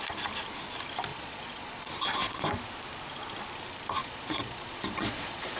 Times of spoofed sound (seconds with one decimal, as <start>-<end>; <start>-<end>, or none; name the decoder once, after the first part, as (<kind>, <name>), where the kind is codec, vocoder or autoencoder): 1.1-1.9 (vocoder, Vocos); 4.0-5.6